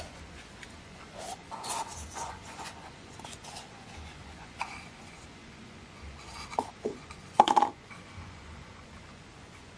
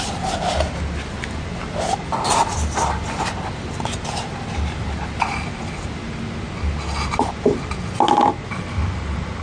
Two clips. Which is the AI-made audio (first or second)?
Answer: first